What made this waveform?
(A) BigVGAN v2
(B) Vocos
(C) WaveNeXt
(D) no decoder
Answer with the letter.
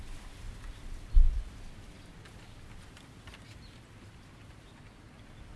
D